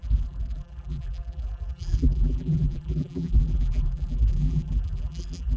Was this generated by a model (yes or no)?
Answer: yes